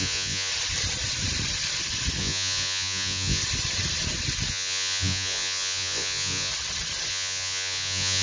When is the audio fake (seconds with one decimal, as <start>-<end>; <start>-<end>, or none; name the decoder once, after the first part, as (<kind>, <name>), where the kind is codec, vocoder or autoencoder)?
0.0-0.5 (vocoder, Vocos); 2.2-3.4; 4.5-6.5; 7.1-8.2